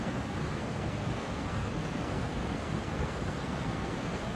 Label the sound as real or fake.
fake